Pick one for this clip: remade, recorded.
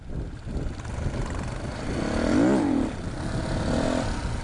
recorded